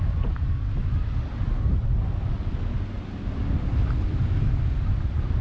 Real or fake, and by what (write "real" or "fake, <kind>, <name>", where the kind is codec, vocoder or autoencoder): real